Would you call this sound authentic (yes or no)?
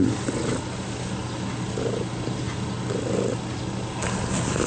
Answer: yes